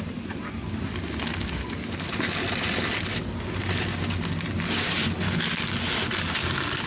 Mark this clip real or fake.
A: real